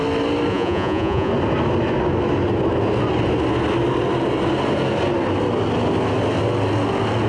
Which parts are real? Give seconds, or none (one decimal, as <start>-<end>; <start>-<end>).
0.0-0.5; 1.3-7.3